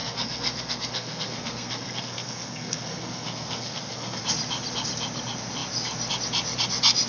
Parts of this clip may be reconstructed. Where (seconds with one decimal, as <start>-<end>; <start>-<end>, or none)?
0.0-4.2

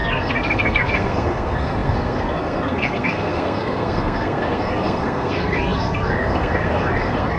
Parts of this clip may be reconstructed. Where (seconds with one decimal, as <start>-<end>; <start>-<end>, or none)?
0.0-7.4

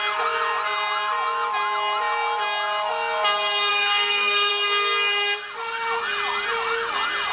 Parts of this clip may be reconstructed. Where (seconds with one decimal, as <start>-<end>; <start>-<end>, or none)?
3.7-4.5

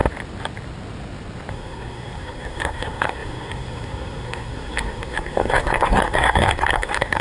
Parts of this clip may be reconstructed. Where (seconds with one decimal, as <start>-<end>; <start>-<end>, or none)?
1.5-7.2

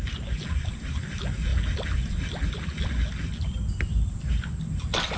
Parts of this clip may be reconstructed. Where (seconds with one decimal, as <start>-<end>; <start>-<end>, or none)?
none

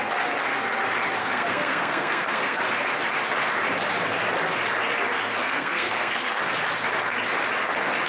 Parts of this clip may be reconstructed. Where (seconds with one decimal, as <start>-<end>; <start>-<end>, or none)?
1.2-2.6; 5.4-6.4